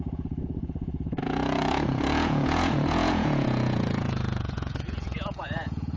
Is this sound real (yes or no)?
no